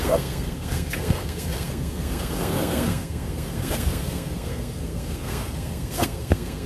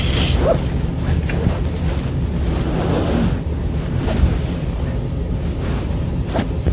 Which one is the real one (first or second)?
second